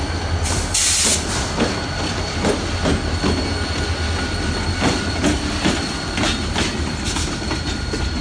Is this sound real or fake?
real